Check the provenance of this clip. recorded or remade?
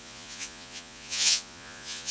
remade